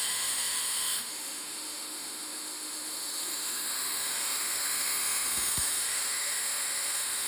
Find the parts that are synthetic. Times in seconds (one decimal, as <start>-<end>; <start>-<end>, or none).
0.0-7.3